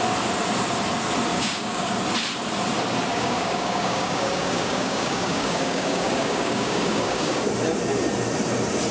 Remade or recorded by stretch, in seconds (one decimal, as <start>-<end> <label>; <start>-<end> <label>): 0.0-1.3 recorded; 1.3-1.9 remade; 1.9-3.1 recorded; 3.1-7.5 remade; 7.5-8.9 recorded